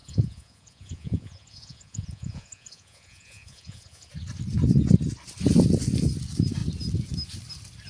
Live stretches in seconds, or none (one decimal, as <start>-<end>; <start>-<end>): 4.1-7.9